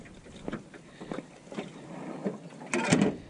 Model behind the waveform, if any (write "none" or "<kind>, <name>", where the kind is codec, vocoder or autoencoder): none